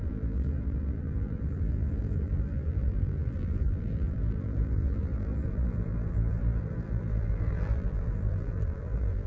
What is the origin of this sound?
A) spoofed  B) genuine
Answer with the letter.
A